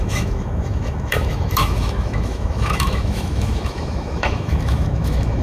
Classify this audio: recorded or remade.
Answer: remade